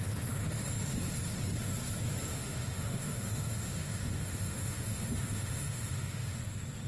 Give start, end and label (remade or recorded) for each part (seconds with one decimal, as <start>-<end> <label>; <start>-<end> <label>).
0.0-2.3 recorded; 2.3-6.4 remade; 6.4-6.9 recorded